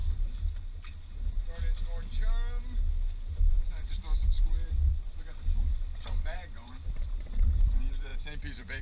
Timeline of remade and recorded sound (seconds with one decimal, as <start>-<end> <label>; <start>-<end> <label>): 0.0-3.7 recorded; 3.7-8.8 remade